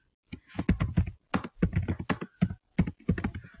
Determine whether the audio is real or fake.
real